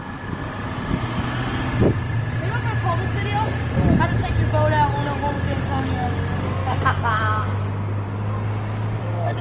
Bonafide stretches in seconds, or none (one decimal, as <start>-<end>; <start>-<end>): 0.4-5.3; 6.6-9.0